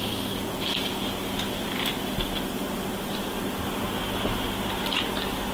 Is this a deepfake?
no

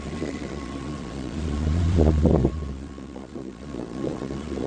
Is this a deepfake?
yes